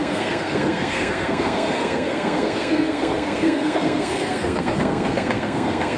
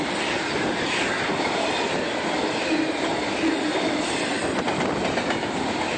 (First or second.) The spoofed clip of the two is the first